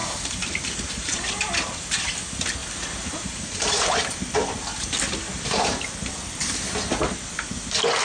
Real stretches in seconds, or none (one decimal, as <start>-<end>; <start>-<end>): 1.4-2.6; 4.1-8.0